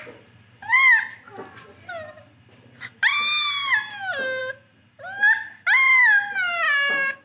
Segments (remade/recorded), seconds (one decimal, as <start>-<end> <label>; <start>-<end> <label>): 0.0-7.2 recorded